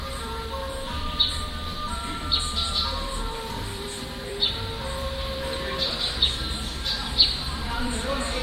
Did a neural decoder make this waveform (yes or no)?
yes